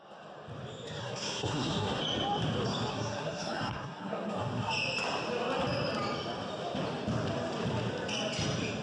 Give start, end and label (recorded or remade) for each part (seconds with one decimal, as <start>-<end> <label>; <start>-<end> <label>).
0.0-1.0 recorded; 1.0-2.0 remade; 2.0-2.9 recorded; 2.9-4.7 remade; 4.7-8.8 recorded